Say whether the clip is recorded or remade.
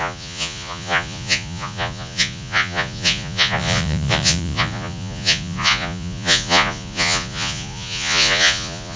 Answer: remade